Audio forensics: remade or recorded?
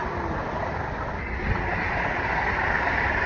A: recorded